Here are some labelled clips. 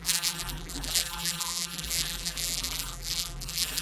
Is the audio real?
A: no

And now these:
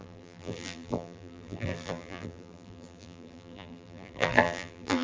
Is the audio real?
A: no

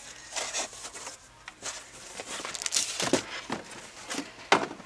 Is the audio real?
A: yes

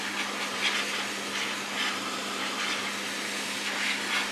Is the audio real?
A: yes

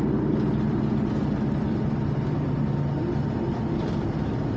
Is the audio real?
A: yes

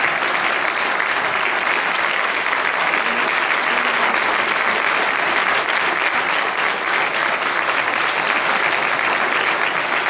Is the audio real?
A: yes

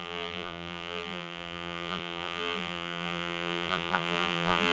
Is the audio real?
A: no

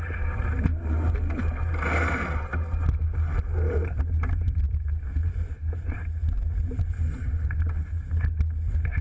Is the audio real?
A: yes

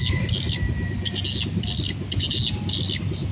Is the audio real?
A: yes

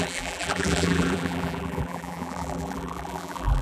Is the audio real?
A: no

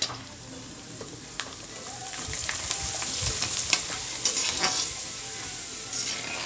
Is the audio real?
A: yes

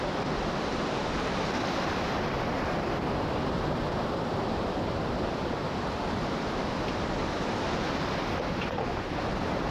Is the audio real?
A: no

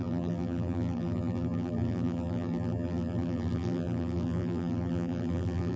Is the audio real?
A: no